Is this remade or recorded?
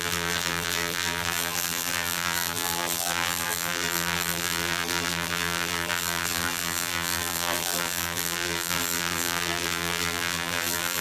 remade